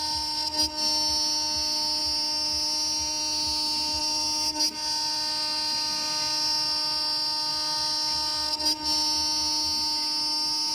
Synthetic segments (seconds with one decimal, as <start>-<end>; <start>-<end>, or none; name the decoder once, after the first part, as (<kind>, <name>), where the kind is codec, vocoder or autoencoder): none